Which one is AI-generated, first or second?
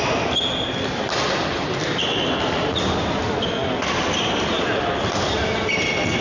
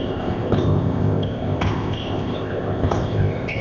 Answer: second